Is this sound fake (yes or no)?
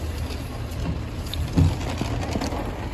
no